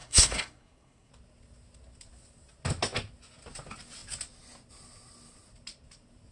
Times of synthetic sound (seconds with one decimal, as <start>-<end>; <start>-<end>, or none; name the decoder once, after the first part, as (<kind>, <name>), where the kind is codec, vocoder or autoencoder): 0.0-1.1 (codec, SNAC)